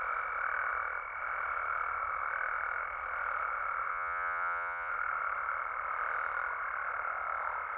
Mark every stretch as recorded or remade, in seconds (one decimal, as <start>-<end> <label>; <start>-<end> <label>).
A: 0.0-3.9 recorded; 3.9-4.9 remade; 4.9-7.8 recorded

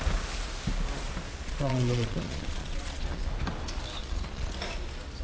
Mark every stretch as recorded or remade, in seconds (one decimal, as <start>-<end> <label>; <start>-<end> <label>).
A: 0.0-1.3 recorded; 1.3-3.3 remade; 3.3-4.0 recorded; 4.0-4.5 remade; 4.5-5.2 recorded